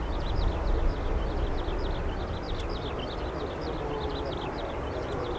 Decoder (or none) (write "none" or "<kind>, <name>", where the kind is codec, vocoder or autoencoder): none